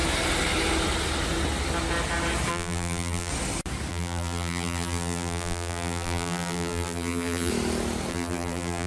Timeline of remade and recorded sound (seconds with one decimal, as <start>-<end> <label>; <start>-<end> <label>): 0.0-2.5 recorded; 2.5-3.3 remade; 3.3-3.9 recorded; 3.9-7.5 remade; 7.5-8.1 recorded; 8.1-8.9 remade